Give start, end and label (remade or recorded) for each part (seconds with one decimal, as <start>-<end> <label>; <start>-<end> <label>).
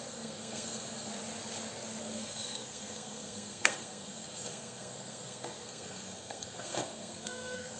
0.0-1.1 remade; 1.1-2.0 recorded; 2.0-7.8 remade